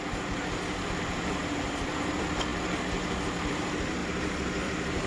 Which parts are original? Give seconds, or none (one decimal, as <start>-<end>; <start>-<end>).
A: none